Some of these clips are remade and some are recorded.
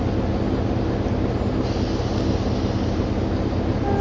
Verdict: recorded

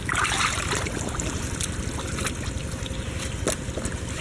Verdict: recorded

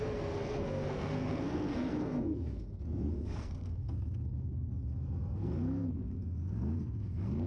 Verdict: remade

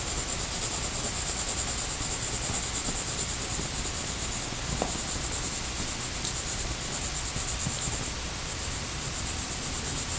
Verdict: recorded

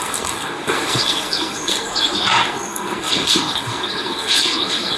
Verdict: remade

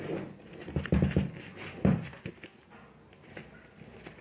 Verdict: recorded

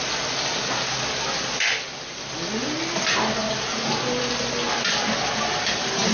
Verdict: recorded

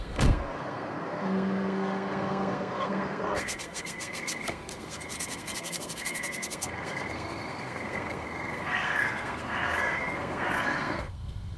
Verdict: remade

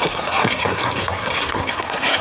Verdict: remade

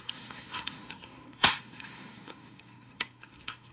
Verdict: remade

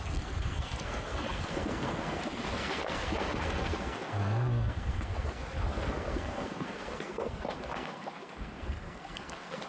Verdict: remade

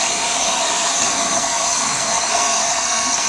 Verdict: remade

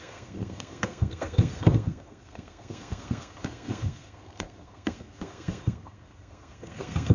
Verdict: remade